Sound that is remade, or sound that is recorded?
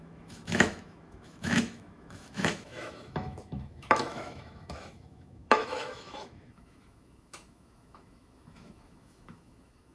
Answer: remade